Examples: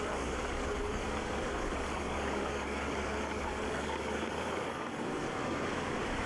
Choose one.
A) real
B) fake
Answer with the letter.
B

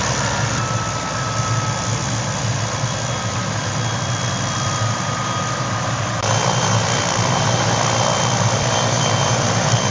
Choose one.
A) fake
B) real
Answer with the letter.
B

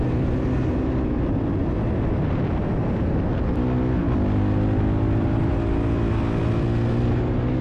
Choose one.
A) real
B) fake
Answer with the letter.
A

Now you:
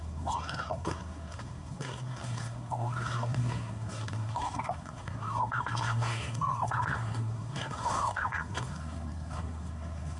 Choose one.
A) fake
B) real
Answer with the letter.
A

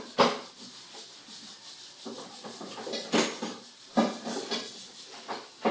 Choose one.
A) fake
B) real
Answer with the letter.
B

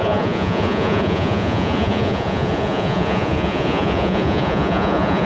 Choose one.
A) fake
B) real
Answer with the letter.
A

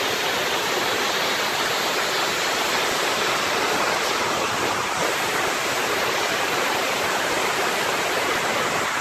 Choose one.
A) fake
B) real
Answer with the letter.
B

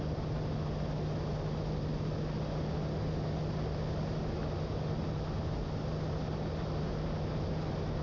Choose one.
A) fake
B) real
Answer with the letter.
B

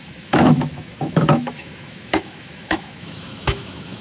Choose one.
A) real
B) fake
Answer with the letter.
B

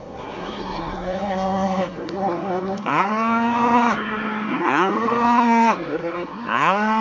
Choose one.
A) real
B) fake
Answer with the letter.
B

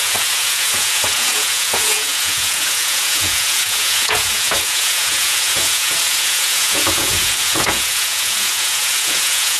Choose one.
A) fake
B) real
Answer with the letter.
A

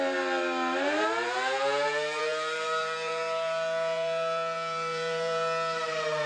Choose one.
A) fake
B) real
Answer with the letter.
A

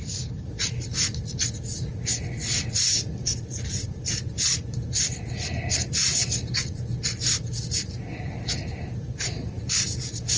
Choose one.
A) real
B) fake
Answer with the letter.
B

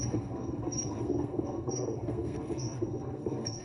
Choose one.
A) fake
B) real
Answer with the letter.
A